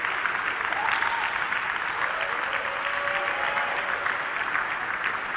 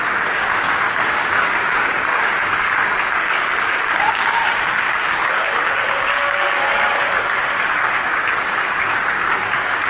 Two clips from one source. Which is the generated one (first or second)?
second